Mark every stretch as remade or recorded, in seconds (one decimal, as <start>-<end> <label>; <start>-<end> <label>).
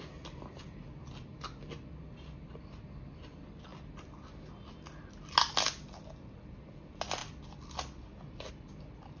0.0-9.2 recorded